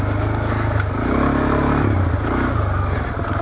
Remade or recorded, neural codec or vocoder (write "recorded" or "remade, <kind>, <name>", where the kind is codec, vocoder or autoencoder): recorded